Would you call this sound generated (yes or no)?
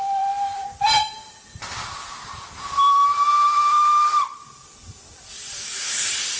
yes